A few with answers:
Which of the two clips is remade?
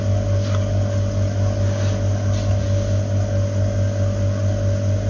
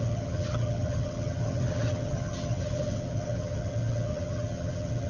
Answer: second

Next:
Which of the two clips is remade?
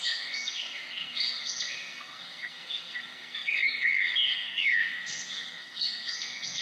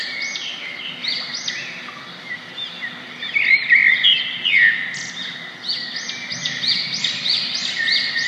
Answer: first